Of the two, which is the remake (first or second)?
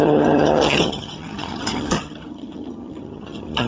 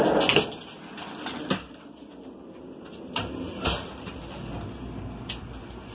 first